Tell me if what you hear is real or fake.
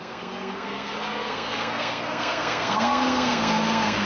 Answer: fake